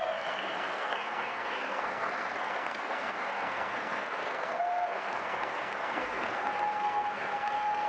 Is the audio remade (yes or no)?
yes